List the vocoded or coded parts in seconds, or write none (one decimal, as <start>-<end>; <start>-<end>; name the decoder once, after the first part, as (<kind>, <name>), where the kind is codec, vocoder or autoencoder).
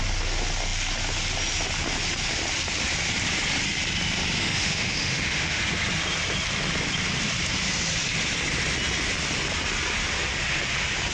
4.4-5.6 (autoencoder, DAC-VAE)